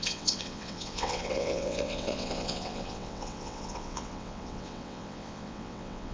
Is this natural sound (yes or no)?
no